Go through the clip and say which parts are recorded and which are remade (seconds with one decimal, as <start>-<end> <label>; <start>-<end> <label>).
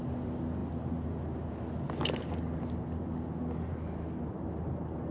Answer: 0.0-5.1 recorded